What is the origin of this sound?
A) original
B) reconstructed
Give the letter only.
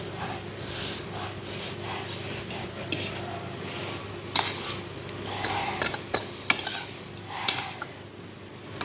A